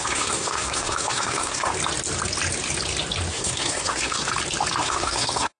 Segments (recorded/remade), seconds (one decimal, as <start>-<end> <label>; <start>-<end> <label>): 0.0-1.7 remade; 1.7-3.3 recorded; 3.3-4.3 remade; 4.3-4.8 recorded; 4.8-5.6 remade